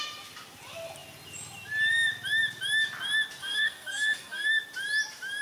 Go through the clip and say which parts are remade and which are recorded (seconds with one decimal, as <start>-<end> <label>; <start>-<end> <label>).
0.0-3.4 recorded; 3.4-4.5 remade; 4.5-5.4 recorded